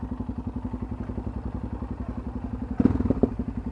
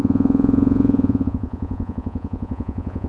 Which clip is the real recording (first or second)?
first